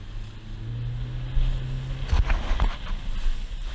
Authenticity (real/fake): real